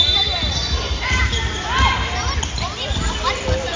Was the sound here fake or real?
real